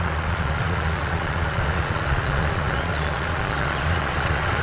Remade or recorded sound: remade